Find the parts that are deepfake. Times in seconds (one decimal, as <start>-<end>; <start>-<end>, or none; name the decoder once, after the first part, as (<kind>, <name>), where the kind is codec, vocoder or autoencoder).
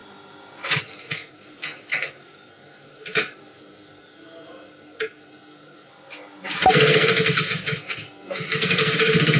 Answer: 0.8-5.9 (codec, SNAC); 6.7-9.4